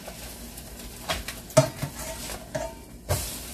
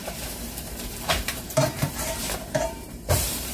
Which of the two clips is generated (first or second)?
second